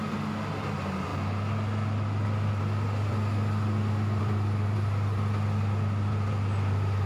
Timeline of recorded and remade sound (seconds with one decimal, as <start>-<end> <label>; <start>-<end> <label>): 0.0-7.1 recorded